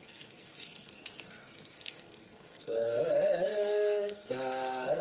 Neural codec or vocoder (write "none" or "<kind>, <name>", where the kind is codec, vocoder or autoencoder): codec, SNAC